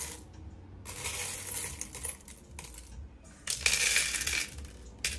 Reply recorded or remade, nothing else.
recorded